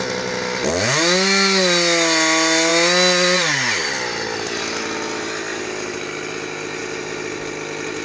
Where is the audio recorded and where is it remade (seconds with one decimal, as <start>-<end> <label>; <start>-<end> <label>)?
0.0-8.0 recorded